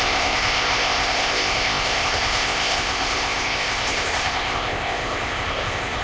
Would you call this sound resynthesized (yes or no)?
yes